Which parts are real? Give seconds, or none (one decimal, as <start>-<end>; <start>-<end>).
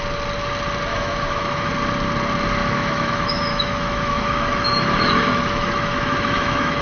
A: 0.0-0.9; 1.7-2.6